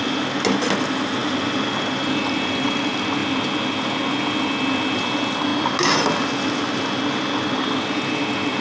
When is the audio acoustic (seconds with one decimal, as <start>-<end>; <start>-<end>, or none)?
0.0-8.6